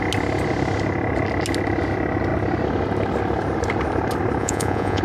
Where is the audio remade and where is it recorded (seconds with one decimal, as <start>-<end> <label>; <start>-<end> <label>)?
0.0-4.4 recorded; 4.4-5.0 remade